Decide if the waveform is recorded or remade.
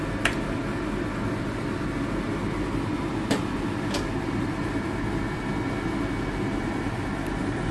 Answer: recorded